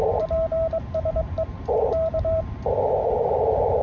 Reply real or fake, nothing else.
fake